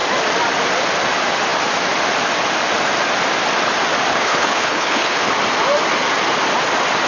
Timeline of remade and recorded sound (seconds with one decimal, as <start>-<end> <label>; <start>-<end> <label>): 0.0-4.1 recorded; 4.1-5.3 remade; 5.3-7.1 recorded